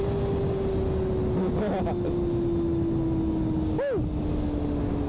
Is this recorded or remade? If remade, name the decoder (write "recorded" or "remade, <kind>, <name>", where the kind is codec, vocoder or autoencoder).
recorded